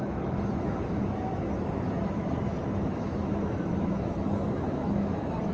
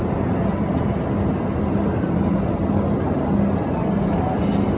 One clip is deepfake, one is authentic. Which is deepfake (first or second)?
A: first